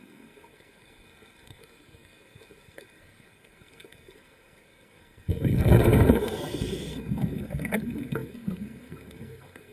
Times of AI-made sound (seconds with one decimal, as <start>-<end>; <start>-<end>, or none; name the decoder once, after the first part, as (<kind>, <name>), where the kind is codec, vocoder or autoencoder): 0.0-9.7 (codec, SNAC)